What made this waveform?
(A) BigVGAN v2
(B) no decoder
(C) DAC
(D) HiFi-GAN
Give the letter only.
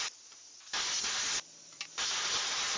B